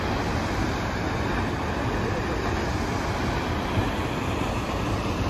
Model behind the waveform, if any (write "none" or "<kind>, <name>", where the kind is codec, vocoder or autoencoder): none